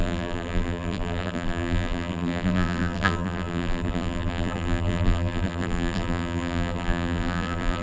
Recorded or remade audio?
remade